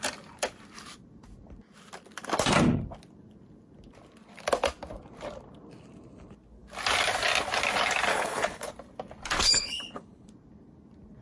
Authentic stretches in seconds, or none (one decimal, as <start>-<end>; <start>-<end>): 0.0-8.1; 8.7-9.4; 10.3-11.2